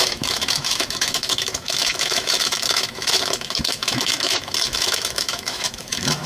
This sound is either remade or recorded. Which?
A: remade